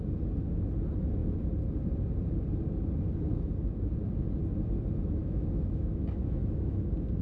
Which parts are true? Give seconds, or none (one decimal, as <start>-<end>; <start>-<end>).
0.0-5.2; 6.8-7.2